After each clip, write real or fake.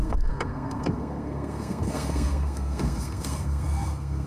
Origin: fake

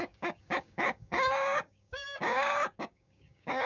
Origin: fake